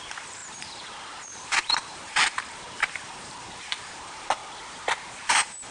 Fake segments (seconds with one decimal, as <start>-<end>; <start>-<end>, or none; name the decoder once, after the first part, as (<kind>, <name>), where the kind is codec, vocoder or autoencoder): 0.0-4.4 (vocoder, BigVGAN v2); 5.1-5.7